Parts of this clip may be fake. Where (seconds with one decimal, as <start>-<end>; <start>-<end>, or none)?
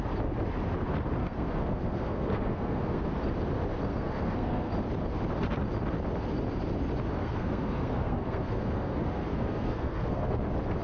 1.2-3.0; 3.9-4.7; 7.2-10.4